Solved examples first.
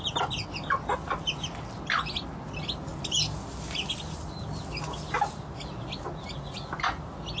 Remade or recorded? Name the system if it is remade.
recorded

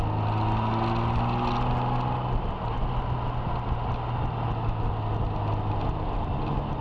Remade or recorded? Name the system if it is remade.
recorded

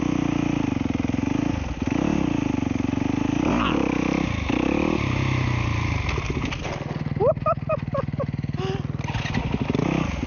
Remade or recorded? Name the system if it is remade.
recorded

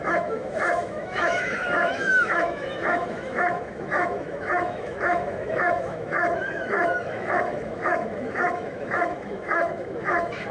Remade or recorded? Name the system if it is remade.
remade, autoencoder, DAC-VAE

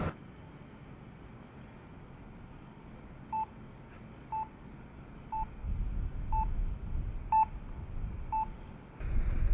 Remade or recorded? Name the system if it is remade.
recorded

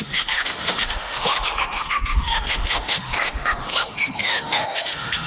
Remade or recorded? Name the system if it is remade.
remade, autoencoder, DAC-VAE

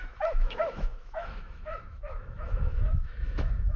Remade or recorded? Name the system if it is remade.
remade, autoencoder, DAC-VAE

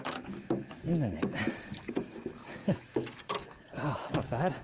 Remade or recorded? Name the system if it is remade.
remade, autoencoder, DAC-VAE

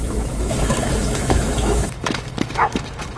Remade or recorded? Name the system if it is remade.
remade, autoencoder, DAC-VAE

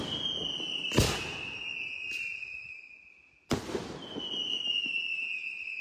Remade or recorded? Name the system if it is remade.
recorded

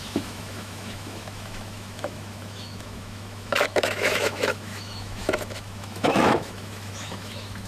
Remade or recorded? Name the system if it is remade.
remade, autoencoder, DAC-VAE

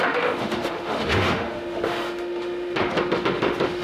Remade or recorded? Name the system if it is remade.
remade, autoencoder, DAC-VAE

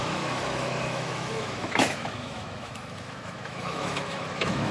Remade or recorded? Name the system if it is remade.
remade, autoencoder, DAC-VAE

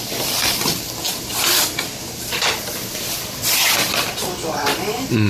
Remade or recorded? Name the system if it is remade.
recorded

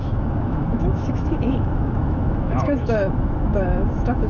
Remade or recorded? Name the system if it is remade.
remade, autoencoder, DAC-VAE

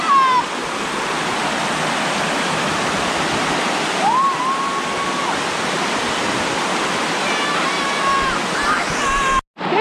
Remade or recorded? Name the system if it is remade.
recorded